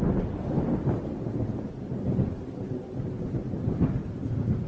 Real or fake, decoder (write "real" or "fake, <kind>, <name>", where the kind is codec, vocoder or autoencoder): real